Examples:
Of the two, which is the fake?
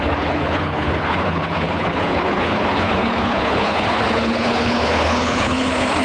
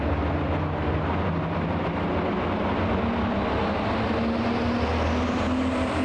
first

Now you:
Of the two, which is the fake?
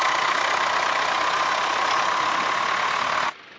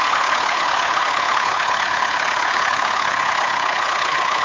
second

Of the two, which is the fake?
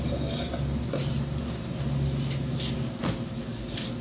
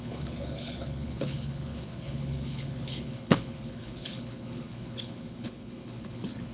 second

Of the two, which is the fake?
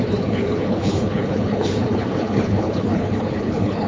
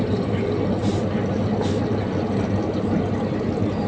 first